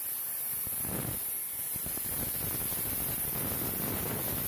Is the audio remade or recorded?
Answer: recorded